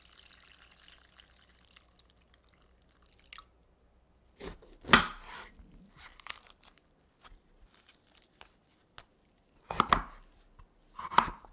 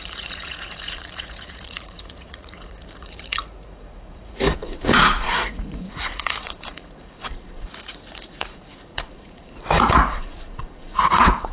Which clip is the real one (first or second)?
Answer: first